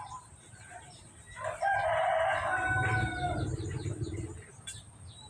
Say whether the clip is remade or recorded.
remade